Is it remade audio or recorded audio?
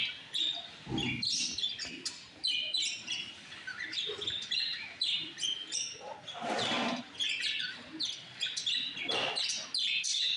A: recorded